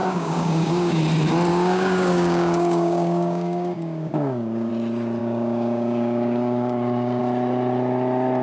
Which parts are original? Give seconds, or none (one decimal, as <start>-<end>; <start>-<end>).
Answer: 1.0-1.5; 4.7-5.2; 7.2-8.4